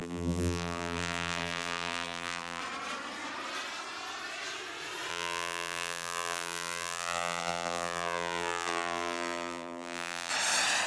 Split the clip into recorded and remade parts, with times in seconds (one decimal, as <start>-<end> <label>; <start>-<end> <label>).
0.0-2.6 remade; 2.6-5.1 recorded; 5.1-10.3 remade; 10.3-10.9 recorded